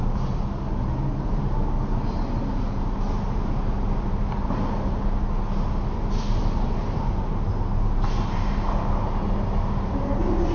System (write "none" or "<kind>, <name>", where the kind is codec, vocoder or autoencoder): none